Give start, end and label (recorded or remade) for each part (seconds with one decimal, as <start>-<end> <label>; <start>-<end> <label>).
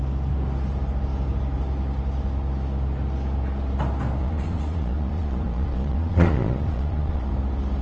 0.0-4.2 recorded; 4.2-7.3 remade; 7.3-7.8 recorded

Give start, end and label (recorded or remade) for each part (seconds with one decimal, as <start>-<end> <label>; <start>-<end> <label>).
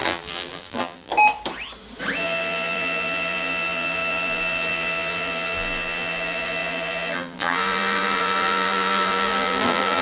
0.0-1.1 remade; 1.1-2.2 recorded; 2.2-10.0 remade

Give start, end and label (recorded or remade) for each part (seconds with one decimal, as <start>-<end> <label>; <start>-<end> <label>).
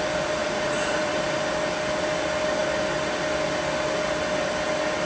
0.0-0.4 recorded; 0.4-1.1 remade; 1.1-5.0 recorded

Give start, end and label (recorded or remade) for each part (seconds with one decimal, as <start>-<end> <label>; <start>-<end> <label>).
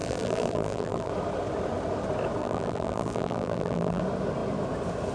0.0-1.1 remade; 1.1-2.4 recorded; 2.4-4.0 remade; 4.0-5.1 recorded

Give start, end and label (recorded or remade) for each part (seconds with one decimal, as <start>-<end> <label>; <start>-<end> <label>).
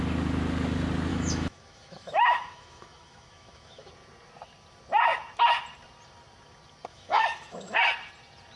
0.0-1.1 recorded; 1.1-3.9 remade; 3.9-6.9 recorded; 6.9-7.8 remade; 7.8-8.6 recorded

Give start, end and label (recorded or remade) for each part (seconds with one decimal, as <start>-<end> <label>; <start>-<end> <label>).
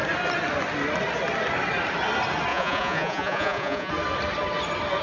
0.0-2.5 recorded; 2.5-3.9 remade; 3.9-5.0 recorded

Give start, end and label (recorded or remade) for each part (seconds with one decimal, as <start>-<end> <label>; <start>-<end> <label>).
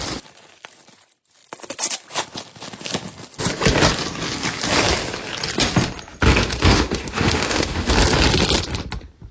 0.0-6.4 recorded; 6.4-7.9 remade; 7.9-9.3 recorded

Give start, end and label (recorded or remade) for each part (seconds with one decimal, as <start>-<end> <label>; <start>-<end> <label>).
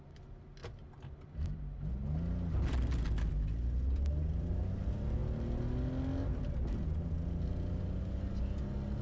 0.0-9.0 recorded